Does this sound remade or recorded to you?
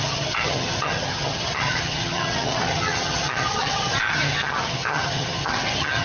remade